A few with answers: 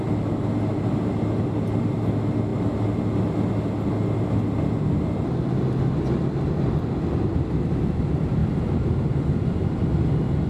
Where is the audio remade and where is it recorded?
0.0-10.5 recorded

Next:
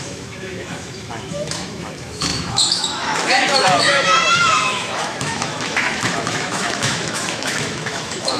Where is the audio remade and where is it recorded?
0.0-8.4 remade

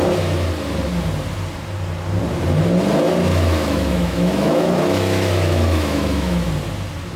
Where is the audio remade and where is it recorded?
0.0-3.3 recorded; 3.3-6.5 remade; 6.5-7.2 recorded

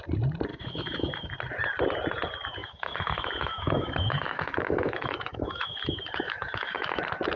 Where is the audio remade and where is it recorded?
0.0-0.5 recorded; 0.5-1.3 remade; 1.3-2.6 recorded; 2.6-7.0 remade; 7.0-7.4 recorded

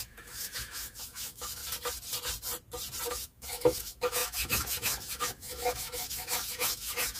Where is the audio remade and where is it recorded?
0.0-1.6 remade; 1.6-3.1 recorded; 3.1-7.2 remade